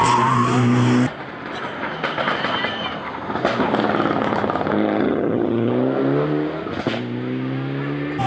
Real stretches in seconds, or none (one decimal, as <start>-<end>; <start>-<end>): 0.0-5.0; 5.7-8.3